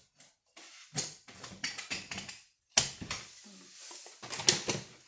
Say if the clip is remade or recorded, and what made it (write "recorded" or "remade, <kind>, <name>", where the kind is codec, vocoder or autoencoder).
recorded